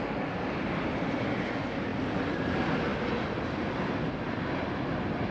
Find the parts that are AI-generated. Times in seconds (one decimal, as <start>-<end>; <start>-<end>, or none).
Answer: none

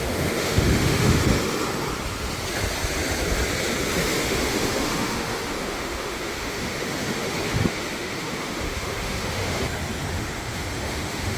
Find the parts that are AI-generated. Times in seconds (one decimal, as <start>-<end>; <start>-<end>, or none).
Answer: 0.0-1.2; 4.0-9.6; 10.1-11.4

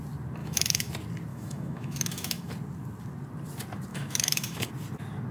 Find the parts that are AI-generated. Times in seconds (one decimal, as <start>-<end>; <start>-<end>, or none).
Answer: 0.4-0.9; 1.3-2.5; 3.9-4.7

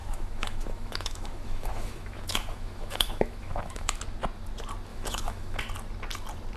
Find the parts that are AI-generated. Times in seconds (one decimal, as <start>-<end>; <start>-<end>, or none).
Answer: 0.0-4.0; 4.9-5.6

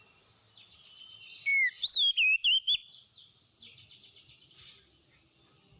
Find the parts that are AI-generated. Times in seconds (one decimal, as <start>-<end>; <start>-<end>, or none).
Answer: none

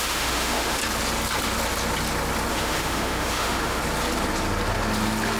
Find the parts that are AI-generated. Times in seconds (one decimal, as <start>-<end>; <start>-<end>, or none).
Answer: 0.0-0.8; 2.5-3.8

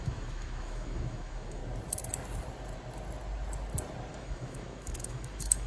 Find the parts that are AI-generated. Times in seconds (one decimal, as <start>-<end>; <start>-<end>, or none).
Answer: 0.0-1.6; 4.1-5.7

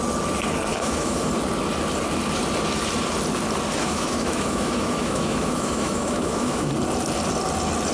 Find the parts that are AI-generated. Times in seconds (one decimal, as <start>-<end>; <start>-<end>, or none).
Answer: 0.7-1.3; 3.8-6.7